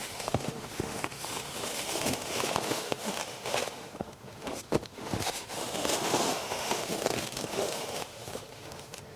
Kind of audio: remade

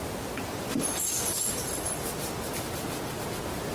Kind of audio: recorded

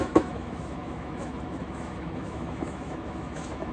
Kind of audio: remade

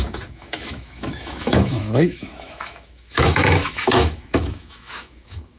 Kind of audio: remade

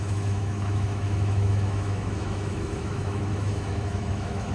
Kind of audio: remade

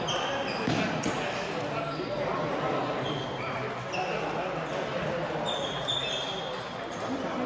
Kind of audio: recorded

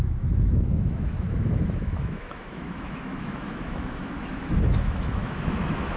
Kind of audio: remade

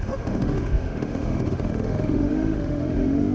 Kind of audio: remade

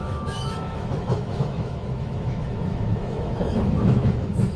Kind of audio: remade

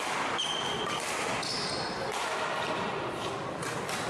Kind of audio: recorded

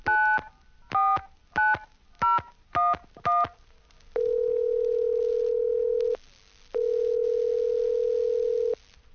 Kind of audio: recorded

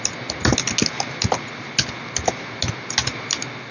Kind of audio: recorded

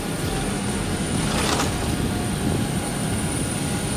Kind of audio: recorded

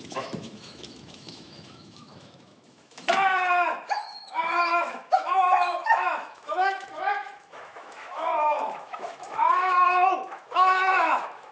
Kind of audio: remade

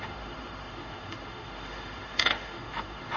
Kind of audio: remade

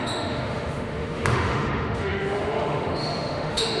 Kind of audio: remade